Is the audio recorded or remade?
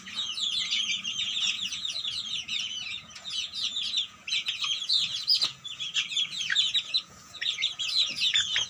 remade